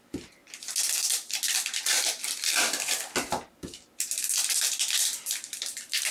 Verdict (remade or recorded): recorded